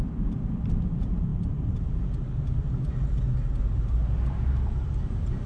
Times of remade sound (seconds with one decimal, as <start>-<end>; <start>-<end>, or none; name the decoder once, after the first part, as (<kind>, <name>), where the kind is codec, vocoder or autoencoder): 0.0-5.5 (vocoder, BigVGAN v2)